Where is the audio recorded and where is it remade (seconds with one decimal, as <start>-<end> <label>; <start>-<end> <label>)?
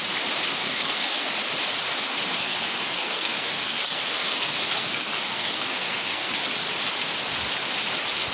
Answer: 0.0-0.6 recorded; 0.6-1.3 remade; 1.3-2.3 recorded; 2.3-6.3 remade; 6.3-8.3 recorded